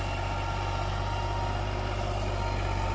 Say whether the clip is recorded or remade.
recorded